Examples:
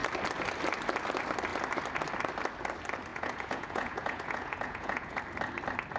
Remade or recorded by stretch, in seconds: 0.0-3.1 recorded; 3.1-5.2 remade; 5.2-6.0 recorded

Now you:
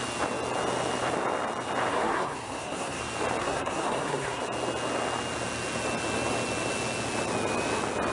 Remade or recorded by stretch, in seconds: 0.0-1.9 recorded; 1.9-3.0 remade; 3.0-3.4 recorded; 3.4-4.4 remade; 4.4-8.1 recorded